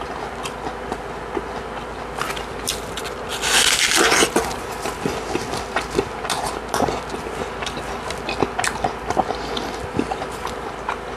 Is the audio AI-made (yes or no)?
no